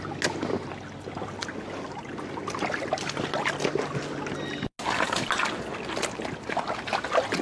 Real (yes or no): yes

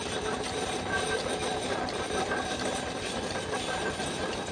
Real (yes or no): yes